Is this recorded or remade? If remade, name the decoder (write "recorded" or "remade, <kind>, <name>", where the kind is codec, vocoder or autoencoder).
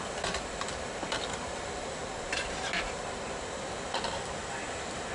recorded